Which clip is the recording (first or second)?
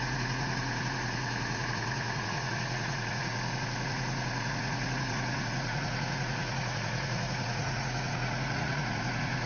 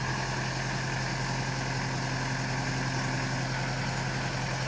second